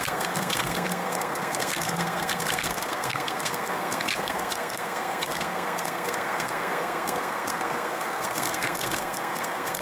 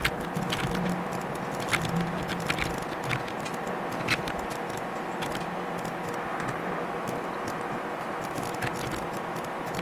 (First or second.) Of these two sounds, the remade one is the first